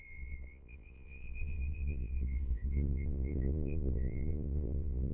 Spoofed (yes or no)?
yes